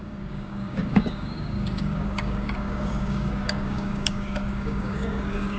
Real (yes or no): no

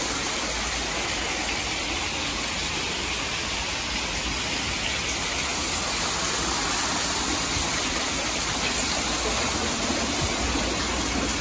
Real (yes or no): yes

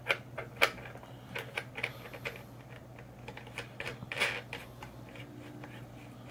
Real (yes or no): yes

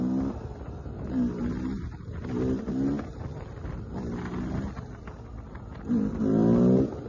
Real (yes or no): yes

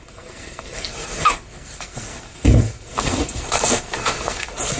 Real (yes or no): no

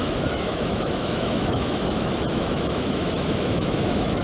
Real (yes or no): no